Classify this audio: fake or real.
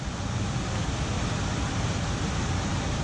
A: real